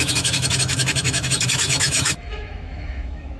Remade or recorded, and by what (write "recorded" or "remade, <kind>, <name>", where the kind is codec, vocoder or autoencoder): remade, autoencoder, DAC-VAE